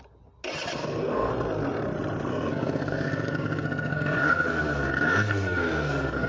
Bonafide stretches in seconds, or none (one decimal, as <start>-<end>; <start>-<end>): 0.0-0.8; 1.3-2.3